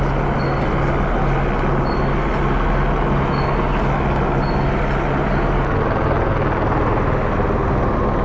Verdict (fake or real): real